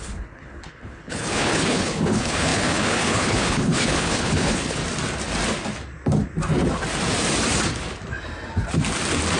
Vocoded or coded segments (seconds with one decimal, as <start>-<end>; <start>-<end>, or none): 0.0-4.8